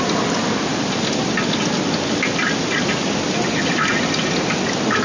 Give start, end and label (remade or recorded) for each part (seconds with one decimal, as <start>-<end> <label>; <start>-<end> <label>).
0.0-5.0 recorded